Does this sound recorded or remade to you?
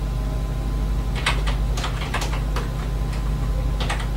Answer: recorded